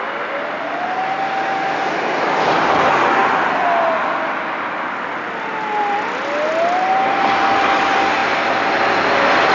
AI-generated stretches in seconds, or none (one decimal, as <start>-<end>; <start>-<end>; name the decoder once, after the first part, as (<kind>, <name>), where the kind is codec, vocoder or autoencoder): none